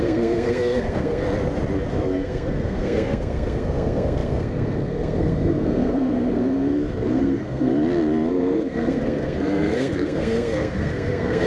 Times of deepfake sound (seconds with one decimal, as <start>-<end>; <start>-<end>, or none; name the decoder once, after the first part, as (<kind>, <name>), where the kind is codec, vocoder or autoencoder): 0.0-1.2 (codec, SNAC); 1.9-7.7; 8.3-11.5